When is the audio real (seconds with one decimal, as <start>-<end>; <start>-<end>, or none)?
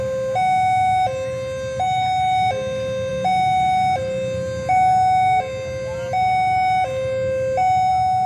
0.0-8.3